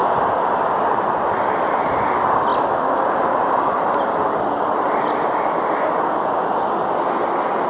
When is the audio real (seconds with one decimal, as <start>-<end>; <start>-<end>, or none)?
0.0-7.7